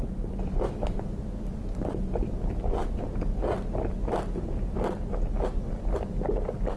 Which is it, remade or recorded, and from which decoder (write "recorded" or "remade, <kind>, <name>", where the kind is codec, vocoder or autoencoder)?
recorded